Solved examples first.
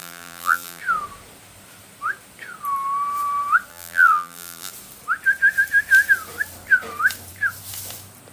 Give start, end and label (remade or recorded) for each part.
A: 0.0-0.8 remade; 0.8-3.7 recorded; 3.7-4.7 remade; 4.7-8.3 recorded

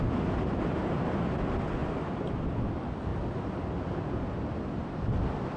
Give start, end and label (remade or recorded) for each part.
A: 0.0-0.8 recorded; 0.8-1.3 remade; 1.3-1.8 recorded; 1.8-2.7 remade; 2.7-5.6 recorded